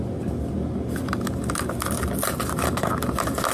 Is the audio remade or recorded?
recorded